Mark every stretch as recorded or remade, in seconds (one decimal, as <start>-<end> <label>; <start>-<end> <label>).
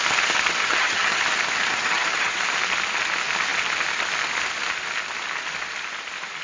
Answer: 0.0-0.6 recorded; 0.6-1.2 remade; 1.2-1.7 recorded; 1.7-2.4 remade; 2.4-6.4 recorded